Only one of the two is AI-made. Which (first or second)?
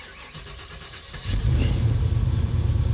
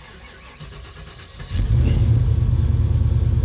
first